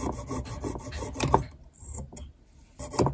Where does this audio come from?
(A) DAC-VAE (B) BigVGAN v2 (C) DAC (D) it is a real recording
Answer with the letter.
D